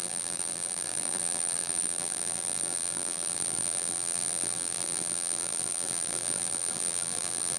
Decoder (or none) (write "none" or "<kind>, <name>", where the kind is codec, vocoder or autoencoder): vocoder, BigVGAN v2